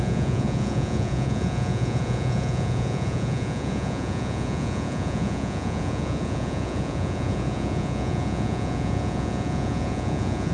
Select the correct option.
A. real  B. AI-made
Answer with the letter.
B